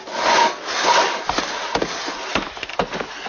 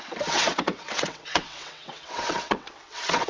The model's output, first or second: second